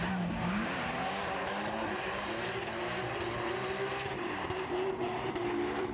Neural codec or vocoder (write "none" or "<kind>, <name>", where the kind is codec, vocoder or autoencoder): vocoder, BigVGAN v2